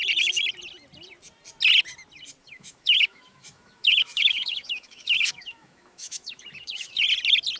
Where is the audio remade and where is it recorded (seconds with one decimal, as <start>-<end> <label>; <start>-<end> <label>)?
0.0-2.4 recorded; 2.4-7.0 remade; 7.0-7.6 recorded

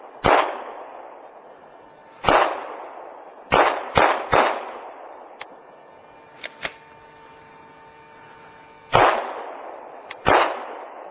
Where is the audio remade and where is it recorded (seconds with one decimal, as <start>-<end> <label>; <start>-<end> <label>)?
0.0-11.1 recorded

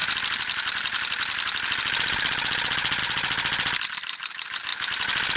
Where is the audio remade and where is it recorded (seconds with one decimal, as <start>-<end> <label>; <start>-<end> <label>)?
0.0-5.4 recorded